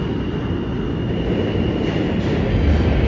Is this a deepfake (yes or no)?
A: no